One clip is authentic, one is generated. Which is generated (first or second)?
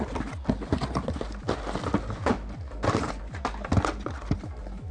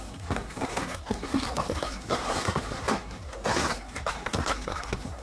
second